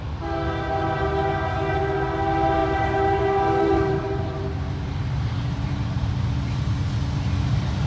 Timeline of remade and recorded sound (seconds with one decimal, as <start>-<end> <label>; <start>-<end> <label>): 0.0-2.6 recorded; 2.6-6.1 remade; 6.1-7.9 recorded